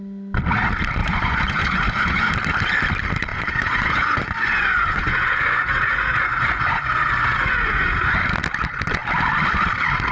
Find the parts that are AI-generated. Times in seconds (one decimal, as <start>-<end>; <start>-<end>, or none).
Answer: 1.0-2.3; 3.3-8.2